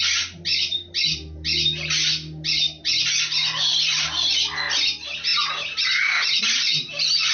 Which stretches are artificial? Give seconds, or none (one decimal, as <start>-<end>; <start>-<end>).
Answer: none